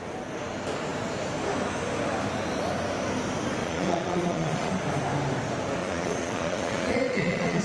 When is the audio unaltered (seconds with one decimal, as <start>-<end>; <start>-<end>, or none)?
0.0-3.6; 4.7-5.8